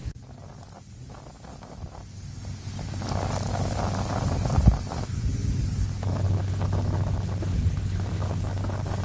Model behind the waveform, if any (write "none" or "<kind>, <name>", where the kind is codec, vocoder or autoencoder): none